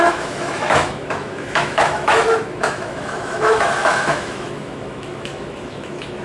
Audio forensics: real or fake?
fake